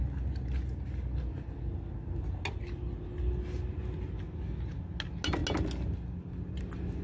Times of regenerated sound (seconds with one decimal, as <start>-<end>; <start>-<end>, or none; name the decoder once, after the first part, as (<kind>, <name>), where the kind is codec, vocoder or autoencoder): none